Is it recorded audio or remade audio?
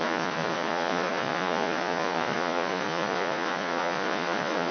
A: remade